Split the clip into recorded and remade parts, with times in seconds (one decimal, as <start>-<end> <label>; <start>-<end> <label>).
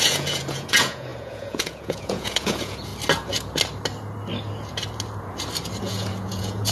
0.0-2.9 remade; 2.9-5.8 recorded; 5.8-6.7 remade